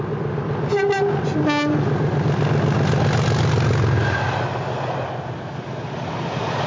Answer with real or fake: real